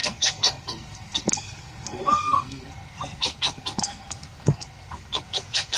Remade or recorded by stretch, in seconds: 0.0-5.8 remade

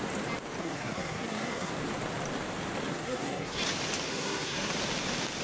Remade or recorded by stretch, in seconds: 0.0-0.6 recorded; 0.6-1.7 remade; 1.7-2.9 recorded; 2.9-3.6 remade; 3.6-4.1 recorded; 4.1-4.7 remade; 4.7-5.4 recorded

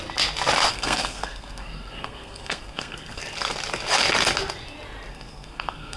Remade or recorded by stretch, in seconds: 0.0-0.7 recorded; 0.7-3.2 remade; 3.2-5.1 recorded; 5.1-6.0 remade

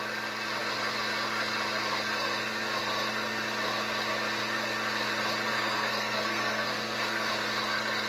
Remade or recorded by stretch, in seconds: 0.0-5.5 recorded; 5.5-7.3 remade; 7.3-8.1 recorded

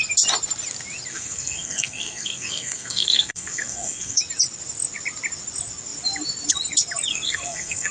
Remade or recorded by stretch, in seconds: 0.0-1.1 recorded; 1.1-4.2 remade; 4.2-7.1 recorded; 7.1-7.9 remade